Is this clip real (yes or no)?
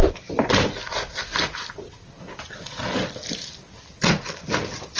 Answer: yes